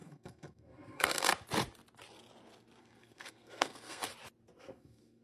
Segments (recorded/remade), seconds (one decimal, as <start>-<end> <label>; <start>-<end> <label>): 0.0-1.3 remade; 1.3-2.8 recorded; 2.8-4.1 remade; 4.1-4.6 recorded; 4.6-5.2 remade